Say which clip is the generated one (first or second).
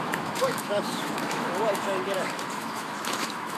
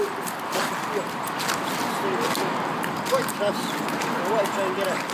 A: first